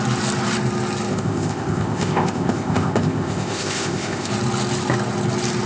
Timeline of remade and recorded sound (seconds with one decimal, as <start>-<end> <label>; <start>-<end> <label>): 0.0-1.1 recorded; 1.1-4.3 remade; 4.3-5.7 recorded